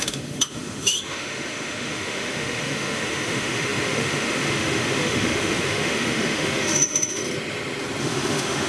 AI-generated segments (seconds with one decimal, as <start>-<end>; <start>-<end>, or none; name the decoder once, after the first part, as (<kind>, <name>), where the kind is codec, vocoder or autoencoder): 0.0-7.2 (autoencoder, DAC-VAE); 8.0-8.7